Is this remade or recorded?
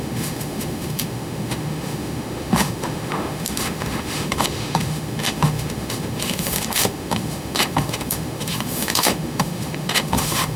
remade